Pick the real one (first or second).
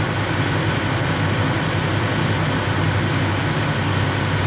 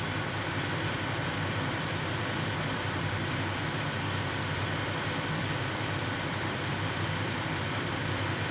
first